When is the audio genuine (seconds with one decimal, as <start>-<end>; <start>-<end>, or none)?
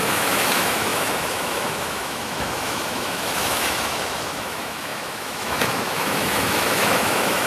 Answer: none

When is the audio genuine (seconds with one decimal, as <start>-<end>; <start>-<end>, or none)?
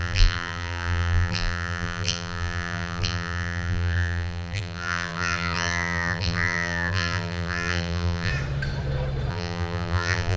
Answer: 8.3-9.3